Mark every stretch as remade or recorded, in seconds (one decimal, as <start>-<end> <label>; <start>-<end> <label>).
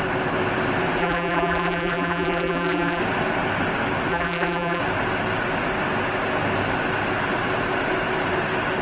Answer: 0.0-1.0 recorded; 1.0-3.0 remade; 3.0-4.1 recorded; 4.1-4.8 remade; 4.8-8.8 recorded